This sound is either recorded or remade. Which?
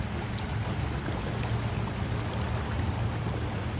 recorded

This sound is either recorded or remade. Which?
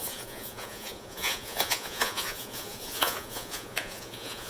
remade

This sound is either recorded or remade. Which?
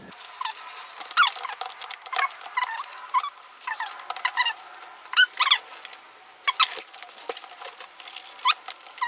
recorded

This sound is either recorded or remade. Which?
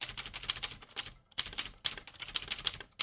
recorded